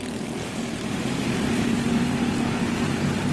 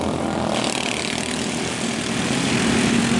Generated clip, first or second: first